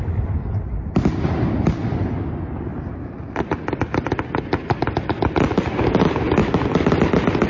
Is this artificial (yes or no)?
no